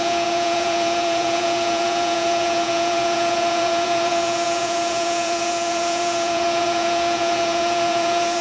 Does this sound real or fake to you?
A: fake